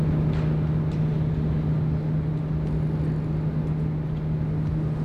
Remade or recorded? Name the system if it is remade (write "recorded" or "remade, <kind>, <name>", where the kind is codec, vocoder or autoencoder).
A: recorded